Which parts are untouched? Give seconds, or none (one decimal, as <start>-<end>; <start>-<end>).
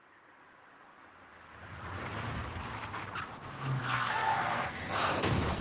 0.0-3.8